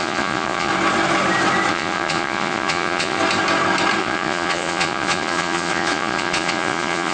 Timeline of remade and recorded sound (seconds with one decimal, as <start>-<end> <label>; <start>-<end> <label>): 0.0-0.7 remade; 0.7-1.7 recorded; 1.7-3.2 remade; 3.2-4.0 recorded; 4.0-7.1 remade